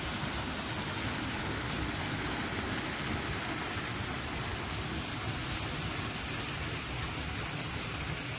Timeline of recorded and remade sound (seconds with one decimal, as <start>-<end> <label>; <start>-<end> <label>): 0.0-8.4 recorded